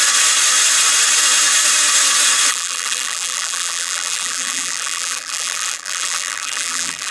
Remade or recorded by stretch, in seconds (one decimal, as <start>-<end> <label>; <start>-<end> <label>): 0.0-2.5 recorded; 2.5-7.1 remade